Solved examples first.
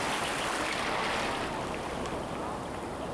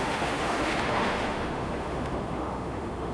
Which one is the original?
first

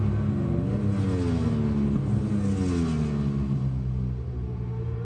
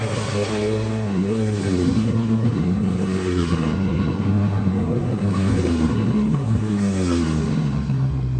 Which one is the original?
first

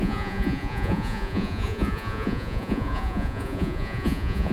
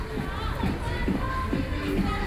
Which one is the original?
second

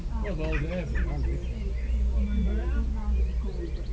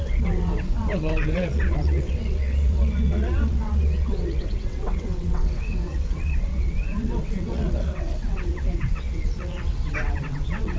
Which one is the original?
first